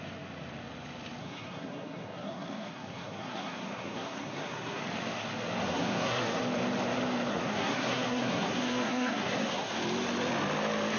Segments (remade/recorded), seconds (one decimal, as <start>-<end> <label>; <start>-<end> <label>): 0.0-1.2 recorded; 1.2-4.8 remade; 4.8-5.6 recorded; 5.6-6.4 remade; 6.4-7.3 recorded; 7.3-9.7 remade; 9.7-11.0 recorded